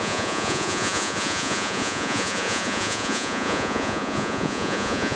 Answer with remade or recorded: remade